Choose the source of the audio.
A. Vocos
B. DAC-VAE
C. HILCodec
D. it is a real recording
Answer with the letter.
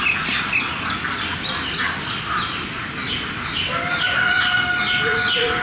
D